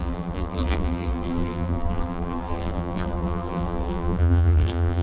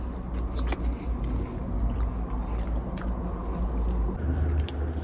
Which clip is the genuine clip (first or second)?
second